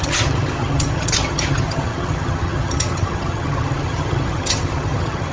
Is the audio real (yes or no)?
no